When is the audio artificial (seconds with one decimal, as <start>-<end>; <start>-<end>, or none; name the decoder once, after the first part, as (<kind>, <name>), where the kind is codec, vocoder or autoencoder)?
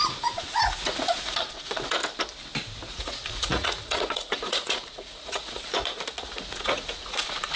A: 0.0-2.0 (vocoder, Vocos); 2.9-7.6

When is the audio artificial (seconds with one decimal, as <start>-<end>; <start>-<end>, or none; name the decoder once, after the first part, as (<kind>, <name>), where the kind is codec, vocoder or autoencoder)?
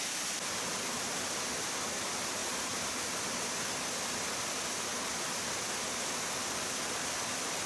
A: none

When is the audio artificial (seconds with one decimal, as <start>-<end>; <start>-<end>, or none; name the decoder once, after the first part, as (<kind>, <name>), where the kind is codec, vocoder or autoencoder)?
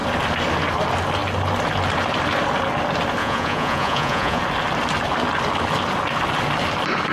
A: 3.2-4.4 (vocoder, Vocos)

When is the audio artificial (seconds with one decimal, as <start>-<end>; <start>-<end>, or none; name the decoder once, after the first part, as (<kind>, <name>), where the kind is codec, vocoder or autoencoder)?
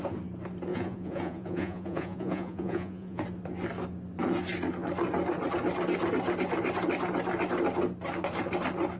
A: 0.7-3.2 (vocoder, Vocos)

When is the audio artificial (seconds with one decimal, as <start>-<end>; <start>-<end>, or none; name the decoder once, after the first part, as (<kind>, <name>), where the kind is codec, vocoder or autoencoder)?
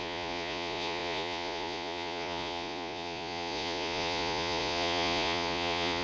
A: 0.0-6.0 (vocoder, Vocos)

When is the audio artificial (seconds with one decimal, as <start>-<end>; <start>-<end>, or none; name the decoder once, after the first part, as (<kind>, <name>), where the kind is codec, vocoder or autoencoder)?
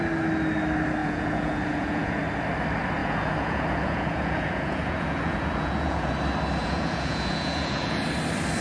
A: 1.0-2.2 (vocoder, Vocos); 3.0-6.1; 6.6-8.1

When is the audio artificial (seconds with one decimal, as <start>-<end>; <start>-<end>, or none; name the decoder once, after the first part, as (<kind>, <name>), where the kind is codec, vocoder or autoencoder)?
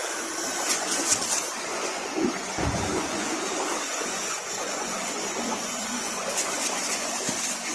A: 0.7-1.1 (vocoder, Vocos); 1.6-7.7